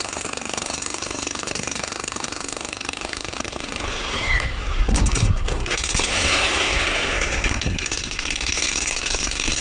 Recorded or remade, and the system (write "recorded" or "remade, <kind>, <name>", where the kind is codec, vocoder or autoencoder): remade, codec, SNAC